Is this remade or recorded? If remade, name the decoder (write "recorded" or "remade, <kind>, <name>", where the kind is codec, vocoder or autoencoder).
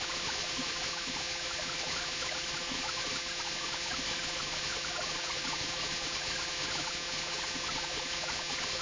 remade, vocoder, BigVGAN v2